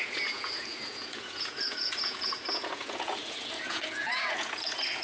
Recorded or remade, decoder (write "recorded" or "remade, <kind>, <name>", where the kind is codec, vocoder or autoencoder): remade, vocoder, Vocos